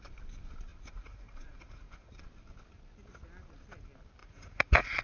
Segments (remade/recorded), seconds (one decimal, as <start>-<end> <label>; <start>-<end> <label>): 0.0-0.7 recorded; 0.7-2.2 remade; 2.2-4.2 recorded; 4.2-5.0 remade